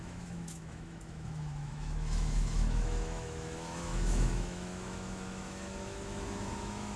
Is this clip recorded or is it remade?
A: remade